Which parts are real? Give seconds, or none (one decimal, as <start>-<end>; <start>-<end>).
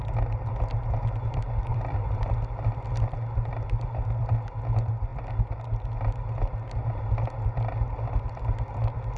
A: 0.0-1.7; 2.3-9.2